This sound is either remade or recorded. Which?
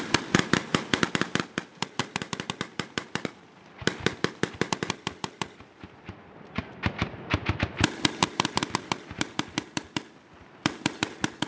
recorded